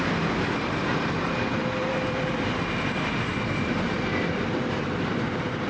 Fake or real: fake